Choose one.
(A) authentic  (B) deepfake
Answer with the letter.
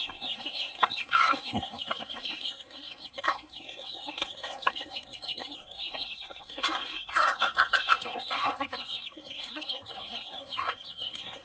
B